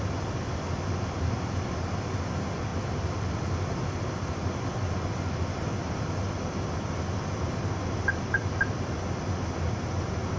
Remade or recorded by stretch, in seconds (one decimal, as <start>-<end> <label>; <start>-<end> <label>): 0.0-10.4 recorded